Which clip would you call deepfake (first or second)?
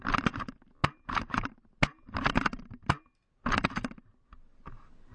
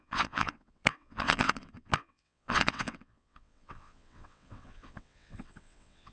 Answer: second